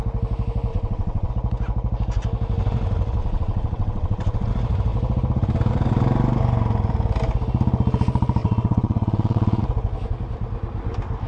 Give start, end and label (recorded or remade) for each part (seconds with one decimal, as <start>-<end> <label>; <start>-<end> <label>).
0.0-0.7 recorded; 0.7-1.3 remade; 1.3-3.2 recorded; 3.2-4.5 remade; 4.5-8.4 recorded; 8.4-9.6 remade; 9.6-11.3 recorded